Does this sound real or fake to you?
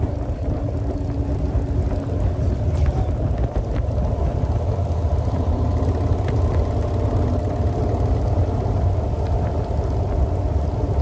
real